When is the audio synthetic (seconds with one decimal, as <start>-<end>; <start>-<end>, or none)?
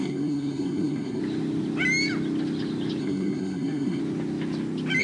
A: 0.0-1.2; 3.0-4.0